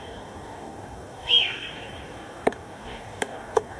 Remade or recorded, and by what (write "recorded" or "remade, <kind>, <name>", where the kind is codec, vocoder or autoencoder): remade, codec, DAC